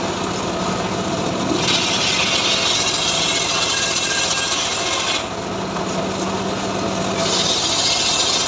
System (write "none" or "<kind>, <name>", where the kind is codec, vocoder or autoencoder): none